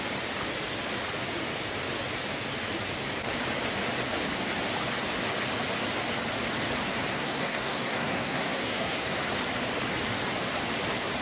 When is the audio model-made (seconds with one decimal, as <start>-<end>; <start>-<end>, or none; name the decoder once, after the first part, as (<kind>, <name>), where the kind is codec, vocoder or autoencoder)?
7.1-9.3 (codec, SNAC)

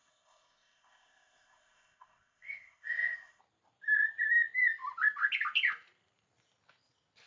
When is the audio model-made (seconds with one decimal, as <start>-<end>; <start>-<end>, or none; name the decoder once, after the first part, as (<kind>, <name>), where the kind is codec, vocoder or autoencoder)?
0.0-3.4 (codec, ZipCodec)